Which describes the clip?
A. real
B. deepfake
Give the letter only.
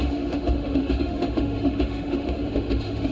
B